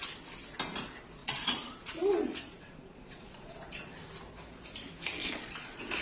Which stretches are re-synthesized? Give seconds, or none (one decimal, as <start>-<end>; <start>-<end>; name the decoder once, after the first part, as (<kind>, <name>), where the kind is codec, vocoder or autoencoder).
1.2-3.9 (vocoder, Vocos); 5.2-6.0